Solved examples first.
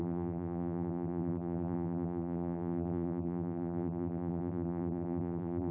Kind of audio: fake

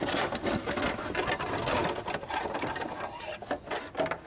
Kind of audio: real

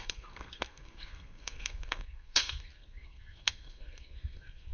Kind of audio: fake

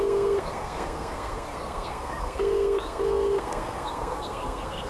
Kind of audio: fake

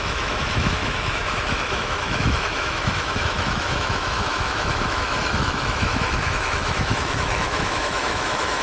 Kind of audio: fake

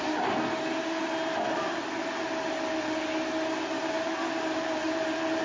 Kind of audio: real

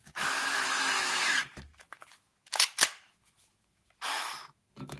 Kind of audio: fake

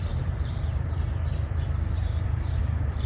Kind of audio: fake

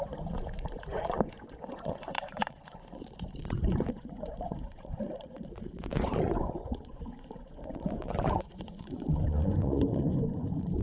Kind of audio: fake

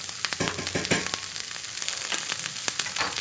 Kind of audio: real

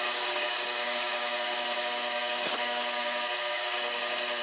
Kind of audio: fake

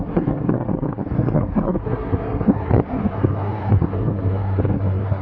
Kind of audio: fake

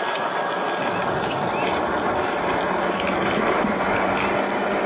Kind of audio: real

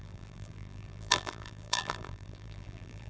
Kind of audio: fake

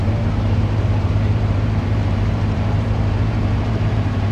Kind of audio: fake